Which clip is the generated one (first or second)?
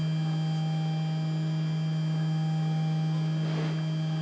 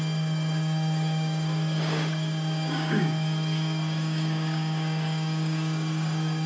second